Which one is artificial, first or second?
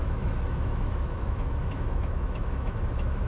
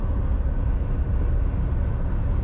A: first